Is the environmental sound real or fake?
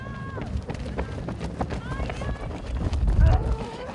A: real